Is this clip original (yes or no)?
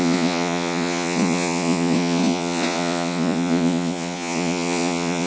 no